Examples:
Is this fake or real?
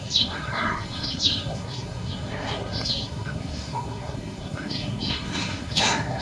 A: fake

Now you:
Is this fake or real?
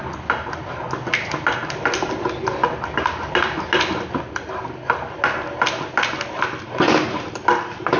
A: real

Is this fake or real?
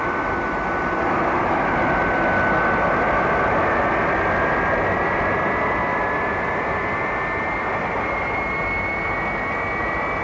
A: real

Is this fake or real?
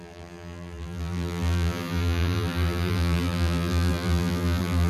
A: fake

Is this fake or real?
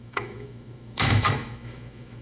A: fake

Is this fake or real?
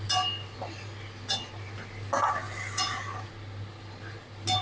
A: real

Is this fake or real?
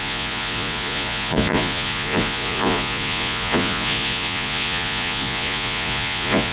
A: fake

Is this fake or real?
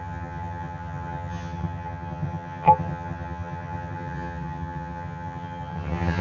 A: fake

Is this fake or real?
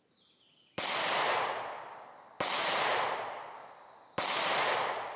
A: real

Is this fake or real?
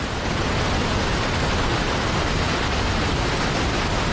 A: real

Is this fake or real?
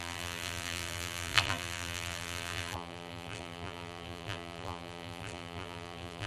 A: fake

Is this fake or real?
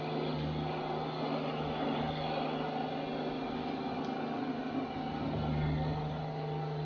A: real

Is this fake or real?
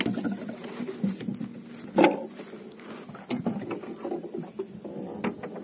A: real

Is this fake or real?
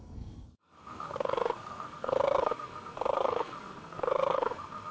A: fake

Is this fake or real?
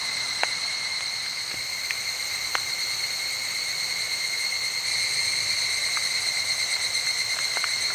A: fake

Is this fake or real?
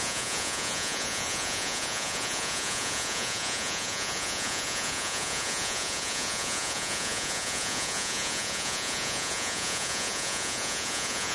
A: fake